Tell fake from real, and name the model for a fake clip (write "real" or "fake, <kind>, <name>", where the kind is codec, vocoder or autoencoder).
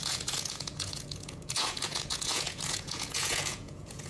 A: fake, vocoder, Vocos